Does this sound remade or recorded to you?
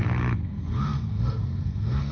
remade